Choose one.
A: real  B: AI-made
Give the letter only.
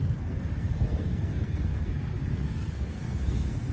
B